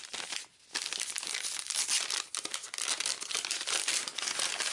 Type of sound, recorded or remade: recorded